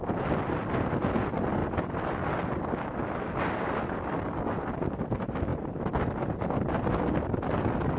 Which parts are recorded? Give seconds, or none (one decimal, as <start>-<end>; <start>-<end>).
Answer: 0.0-8.0